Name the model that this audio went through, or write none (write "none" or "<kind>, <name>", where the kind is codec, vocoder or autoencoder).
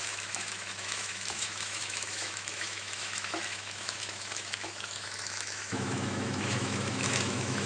autoencoder, DAC-VAE